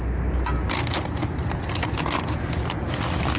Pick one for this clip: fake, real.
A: real